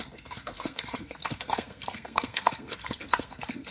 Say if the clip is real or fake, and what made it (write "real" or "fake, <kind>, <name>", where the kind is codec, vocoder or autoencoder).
fake, codec, SNAC